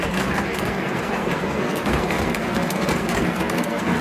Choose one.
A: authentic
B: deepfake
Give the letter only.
B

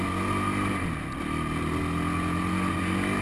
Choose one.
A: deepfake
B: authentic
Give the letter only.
B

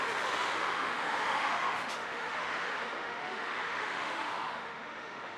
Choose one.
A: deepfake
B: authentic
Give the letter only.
A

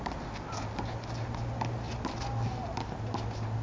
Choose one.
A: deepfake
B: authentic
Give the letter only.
B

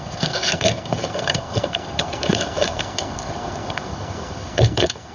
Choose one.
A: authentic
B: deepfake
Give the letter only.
B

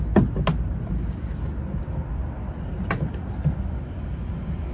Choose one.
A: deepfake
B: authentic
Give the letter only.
B